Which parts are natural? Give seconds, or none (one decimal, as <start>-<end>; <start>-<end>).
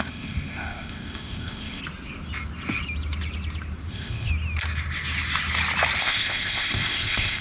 1.8-3.9; 4.3-6.0